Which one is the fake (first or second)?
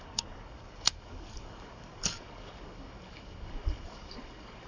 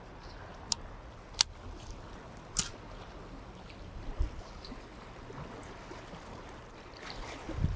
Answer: first